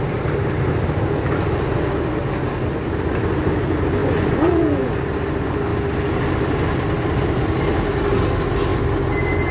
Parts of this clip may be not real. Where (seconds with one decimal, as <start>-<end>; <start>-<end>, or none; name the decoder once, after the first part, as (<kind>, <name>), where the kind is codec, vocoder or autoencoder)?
4.0-4.9 (vocoder, Vocos)